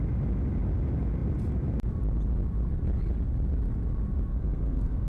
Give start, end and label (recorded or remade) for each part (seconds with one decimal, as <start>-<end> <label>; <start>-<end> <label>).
0.0-4.3 recorded; 4.3-5.1 remade